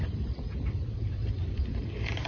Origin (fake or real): fake